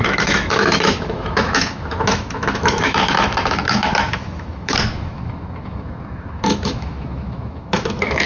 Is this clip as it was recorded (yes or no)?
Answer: no